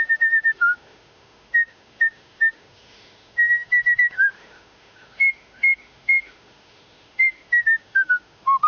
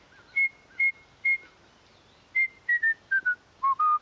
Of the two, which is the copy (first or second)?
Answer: first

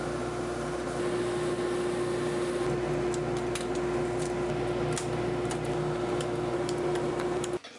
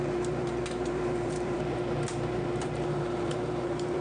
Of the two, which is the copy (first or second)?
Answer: second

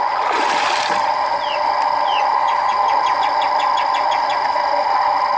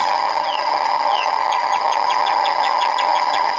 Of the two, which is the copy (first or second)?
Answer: second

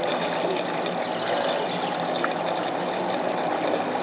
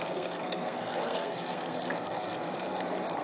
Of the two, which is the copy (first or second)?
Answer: second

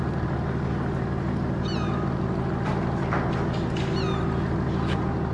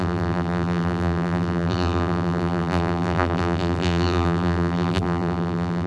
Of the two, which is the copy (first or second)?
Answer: second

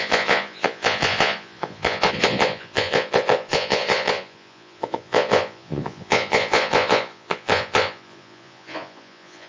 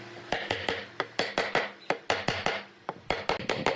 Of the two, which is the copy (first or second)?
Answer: first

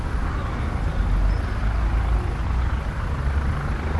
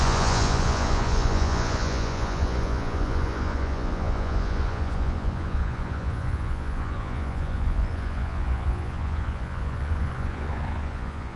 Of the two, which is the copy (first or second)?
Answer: second